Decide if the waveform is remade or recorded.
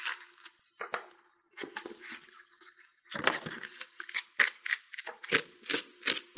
remade